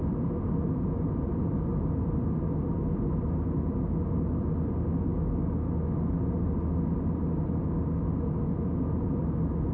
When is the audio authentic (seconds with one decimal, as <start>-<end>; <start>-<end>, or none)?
0.5-1.7; 2.8-9.7